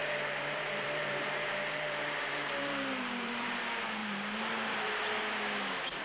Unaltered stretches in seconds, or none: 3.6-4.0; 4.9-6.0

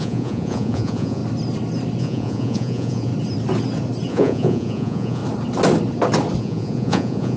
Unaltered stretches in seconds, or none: 1.2-2.0; 3.1-4.1; 5.2-6.4